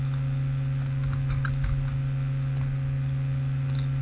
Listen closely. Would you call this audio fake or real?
real